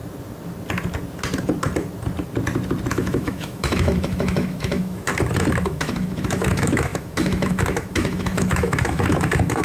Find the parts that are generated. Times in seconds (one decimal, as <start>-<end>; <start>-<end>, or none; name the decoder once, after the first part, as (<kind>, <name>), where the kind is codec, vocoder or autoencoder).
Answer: 2.9-5.1 (autoencoder, DAC-VAE); 5.6-9.6